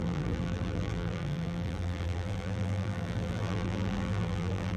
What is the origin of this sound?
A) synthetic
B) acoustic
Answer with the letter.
A